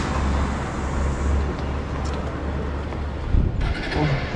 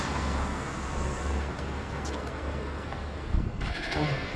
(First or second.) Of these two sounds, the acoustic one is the first